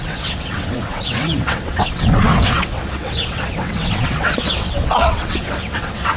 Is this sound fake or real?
fake